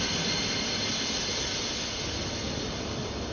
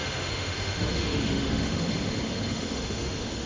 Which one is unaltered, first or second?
first